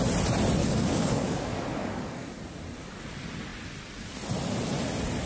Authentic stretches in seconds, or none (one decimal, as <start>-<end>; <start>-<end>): 0.0-0.6; 2.4-5.3

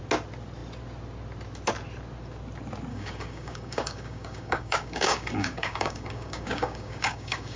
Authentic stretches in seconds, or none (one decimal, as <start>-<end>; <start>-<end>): 0.0-2.9

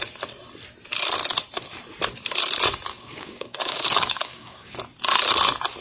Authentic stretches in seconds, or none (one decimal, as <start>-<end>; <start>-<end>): 0.0-2.9; 4.8-5.8

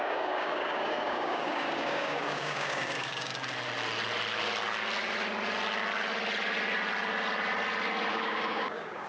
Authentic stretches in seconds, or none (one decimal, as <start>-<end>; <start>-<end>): 3.3-8.1